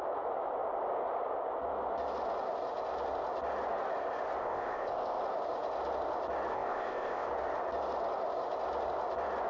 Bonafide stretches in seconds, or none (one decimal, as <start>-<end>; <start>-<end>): 0.0-4.4; 5.2-6.5; 7.3-9.5